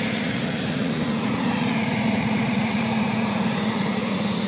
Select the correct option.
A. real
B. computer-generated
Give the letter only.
B